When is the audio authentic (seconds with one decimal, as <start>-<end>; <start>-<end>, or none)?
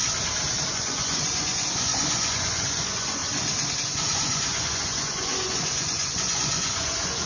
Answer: 0.0-0.7; 3.2-3.7